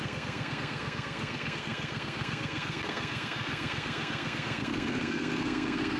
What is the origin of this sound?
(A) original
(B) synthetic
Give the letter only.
B